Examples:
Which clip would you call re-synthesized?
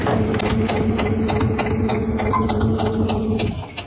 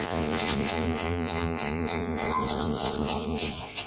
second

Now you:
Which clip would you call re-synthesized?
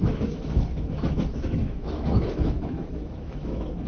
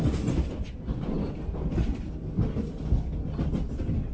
first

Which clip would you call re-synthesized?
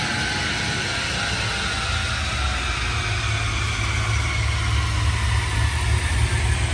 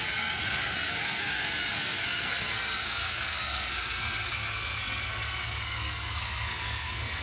second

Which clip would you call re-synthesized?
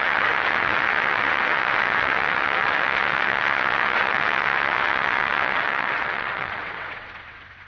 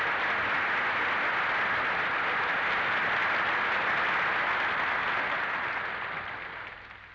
first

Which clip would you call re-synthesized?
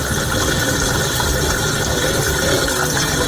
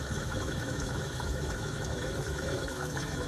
second